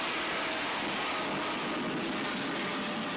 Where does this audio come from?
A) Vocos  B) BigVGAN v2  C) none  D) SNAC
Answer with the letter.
C